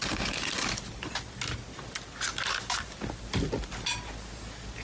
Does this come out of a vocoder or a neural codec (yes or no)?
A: no